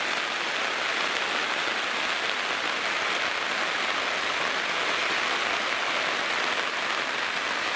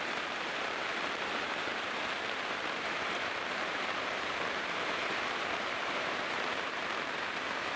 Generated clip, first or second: second